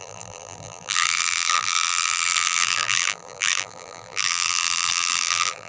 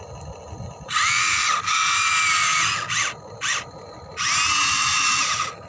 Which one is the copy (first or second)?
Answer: first